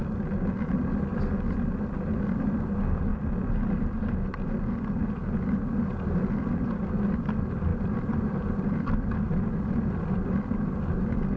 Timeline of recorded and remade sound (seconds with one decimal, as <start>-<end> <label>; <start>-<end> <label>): 0.0-3.1 recorded; 3.1-4.1 remade; 4.1-7.7 recorded; 7.7-10.6 remade; 10.6-11.4 recorded